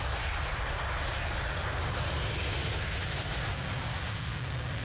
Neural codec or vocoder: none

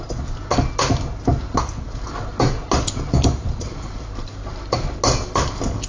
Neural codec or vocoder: none